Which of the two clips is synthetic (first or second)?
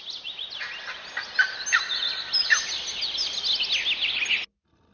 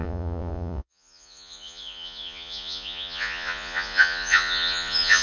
second